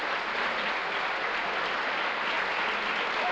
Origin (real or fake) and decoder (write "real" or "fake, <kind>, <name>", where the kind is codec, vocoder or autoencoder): real